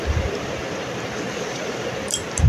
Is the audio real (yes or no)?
yes